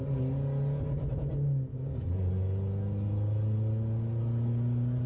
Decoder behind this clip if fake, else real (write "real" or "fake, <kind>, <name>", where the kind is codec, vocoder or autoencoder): real